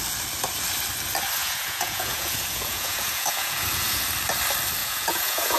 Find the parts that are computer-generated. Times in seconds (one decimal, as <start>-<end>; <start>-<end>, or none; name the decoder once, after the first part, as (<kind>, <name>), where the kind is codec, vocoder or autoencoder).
1.4-4.1 (vocoder, Vocos); 4.8-5.6